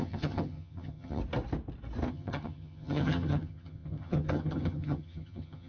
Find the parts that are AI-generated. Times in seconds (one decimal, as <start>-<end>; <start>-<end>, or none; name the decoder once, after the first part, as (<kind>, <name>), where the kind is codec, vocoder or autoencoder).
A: 0.0-1.2 (vocoder, HiFi-GAN); 2.1-5.7